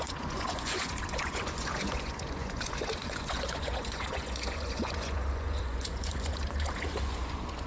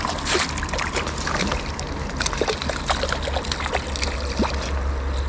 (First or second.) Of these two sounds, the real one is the second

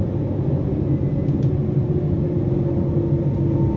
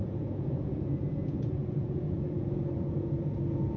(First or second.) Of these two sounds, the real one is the first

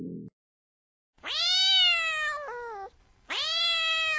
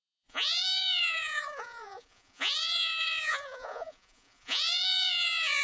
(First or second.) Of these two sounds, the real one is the first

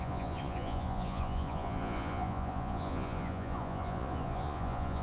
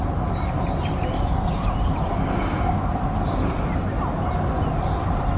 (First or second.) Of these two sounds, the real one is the second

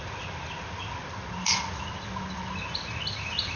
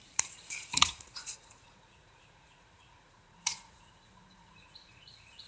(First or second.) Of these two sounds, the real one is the first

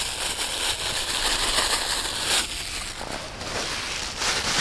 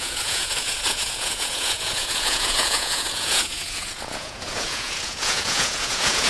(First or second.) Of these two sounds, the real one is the first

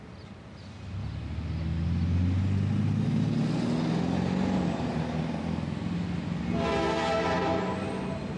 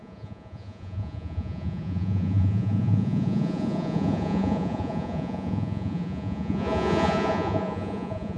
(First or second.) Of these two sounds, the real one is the first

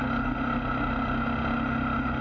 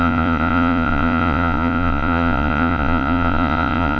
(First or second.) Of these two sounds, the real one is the first